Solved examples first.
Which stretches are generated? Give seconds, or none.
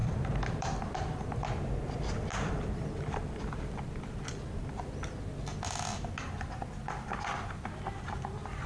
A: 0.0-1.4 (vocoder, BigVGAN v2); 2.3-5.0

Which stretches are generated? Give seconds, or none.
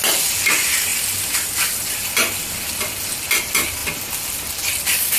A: none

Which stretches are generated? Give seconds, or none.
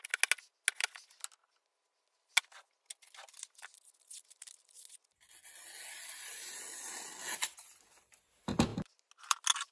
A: none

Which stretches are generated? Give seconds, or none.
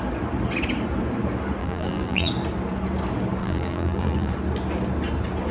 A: 1.6-2.3 (vocoder, BigVGAN v2); 3.4-4.3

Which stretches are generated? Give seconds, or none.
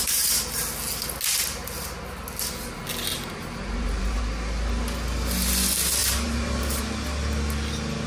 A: 3.1-4.2 (vocoder, BigVGAN v2); 6.0-6.8